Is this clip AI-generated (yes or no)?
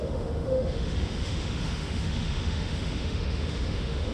yes